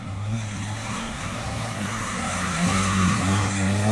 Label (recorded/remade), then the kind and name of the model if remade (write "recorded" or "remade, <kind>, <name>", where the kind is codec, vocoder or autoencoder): remade, codec, SNAC